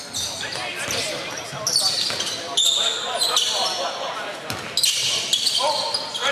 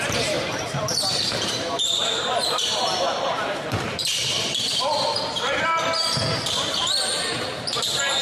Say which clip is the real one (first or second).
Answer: first